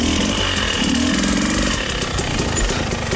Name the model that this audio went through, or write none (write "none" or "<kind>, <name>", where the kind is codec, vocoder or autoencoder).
none